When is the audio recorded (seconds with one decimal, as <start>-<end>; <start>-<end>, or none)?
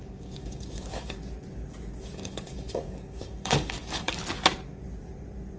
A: 1.2-2.0; 4.2-5.6